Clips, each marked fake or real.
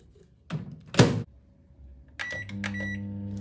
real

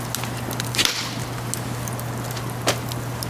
real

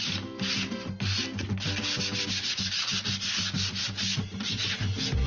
real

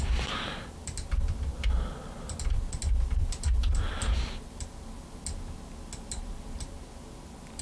real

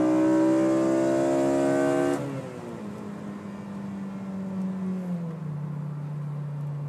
real